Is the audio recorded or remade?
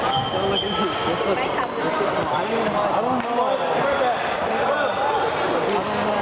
recorded